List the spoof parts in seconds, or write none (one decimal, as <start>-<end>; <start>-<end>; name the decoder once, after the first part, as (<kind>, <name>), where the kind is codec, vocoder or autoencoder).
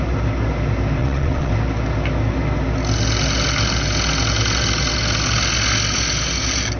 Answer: 1.0-1.5 (vocoder, WaveNeXt)